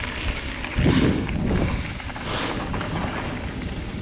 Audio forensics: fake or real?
real